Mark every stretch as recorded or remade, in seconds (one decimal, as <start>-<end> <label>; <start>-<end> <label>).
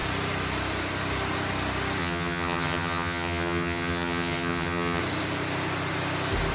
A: 0.0-2.0 recorded; 2.0-5.0 remade; 5.0-6.5 recorded